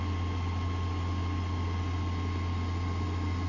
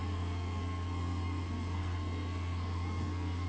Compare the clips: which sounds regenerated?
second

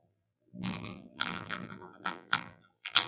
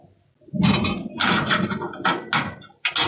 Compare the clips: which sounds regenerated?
first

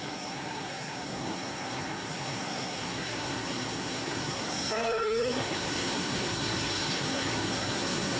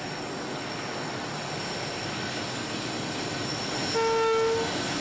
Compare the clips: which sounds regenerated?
first